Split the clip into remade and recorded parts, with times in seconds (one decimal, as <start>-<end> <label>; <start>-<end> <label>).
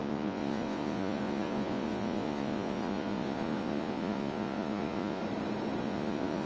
0.0-5.2 remade; 5.2-5.8 recorded; 5.8-6.5 remade